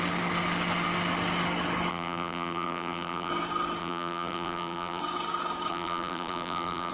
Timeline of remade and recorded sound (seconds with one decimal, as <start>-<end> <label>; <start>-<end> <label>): 0.0-1.9 recorded; 1.9-3.3 remade; 3.3-3.8 recorded; 3.8-5.0 remade; 5.0-5.7 recorded; 5.7-6.9 remade